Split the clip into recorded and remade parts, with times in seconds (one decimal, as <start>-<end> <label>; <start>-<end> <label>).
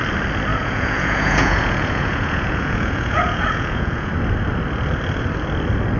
0.0-0.5 recorded; 0.5-4.1 remade; 4.1-6.0 recorded